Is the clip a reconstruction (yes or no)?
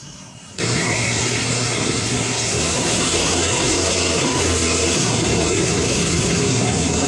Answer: yes